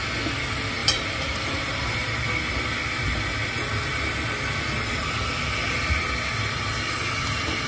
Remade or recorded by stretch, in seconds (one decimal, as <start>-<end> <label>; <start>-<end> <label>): 0.0-0.8 recorded; 0.8-2.1 remade; 2.1-7.7 recorded